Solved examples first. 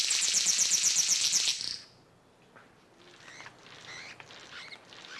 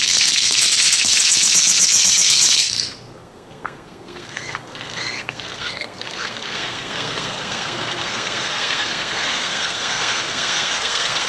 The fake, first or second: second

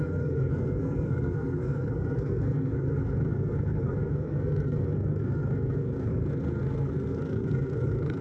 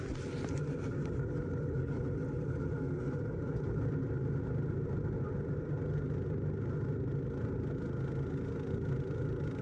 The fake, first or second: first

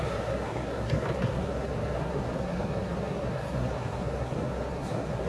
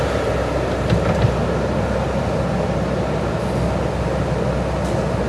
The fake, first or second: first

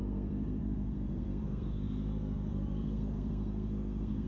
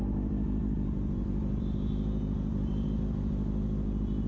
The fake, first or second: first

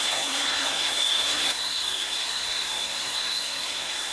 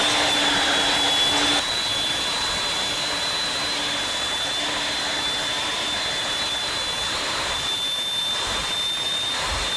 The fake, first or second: first